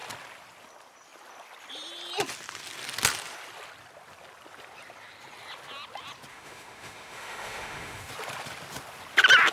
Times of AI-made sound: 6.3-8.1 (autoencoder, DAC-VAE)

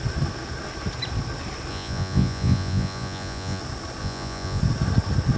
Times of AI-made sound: 1.7-3.6 (vocoder, Vocos); 4.0-4.6

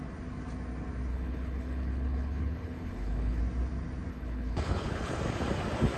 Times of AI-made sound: 1.1-3.4 (codec, HILCodec); 4.1-5.2

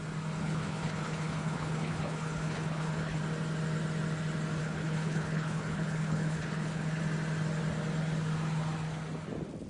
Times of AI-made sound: 0.4-3.2 (codec, HILCodec); 4.6-7.0

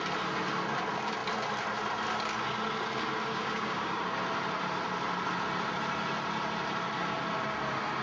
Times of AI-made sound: 3.3-4.0 (codec, DAC)